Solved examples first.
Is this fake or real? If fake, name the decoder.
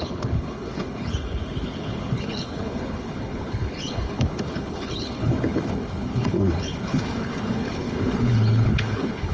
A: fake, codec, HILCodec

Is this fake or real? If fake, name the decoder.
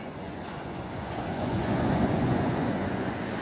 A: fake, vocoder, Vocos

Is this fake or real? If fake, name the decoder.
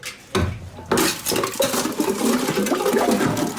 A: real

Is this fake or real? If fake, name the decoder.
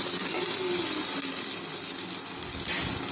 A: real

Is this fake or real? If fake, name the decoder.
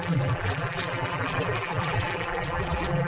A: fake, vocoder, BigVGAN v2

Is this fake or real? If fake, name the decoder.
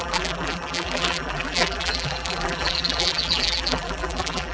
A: fake, vocoder, BigVGAN v2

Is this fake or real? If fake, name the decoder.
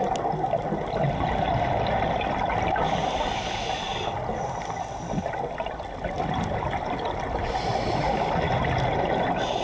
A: real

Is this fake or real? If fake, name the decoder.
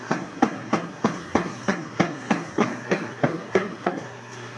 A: fake, codec, SNAC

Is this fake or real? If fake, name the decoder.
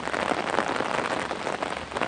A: real